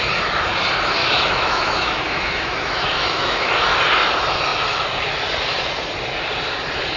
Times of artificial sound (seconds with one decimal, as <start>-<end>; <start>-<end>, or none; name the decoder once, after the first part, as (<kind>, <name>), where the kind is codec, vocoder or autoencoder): 1.0-3.5 (autoencoder, DAC-VAE)